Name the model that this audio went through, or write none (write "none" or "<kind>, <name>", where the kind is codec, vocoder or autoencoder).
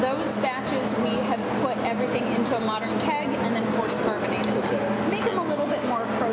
none